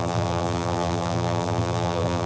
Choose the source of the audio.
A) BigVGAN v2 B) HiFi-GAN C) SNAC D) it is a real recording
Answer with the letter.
A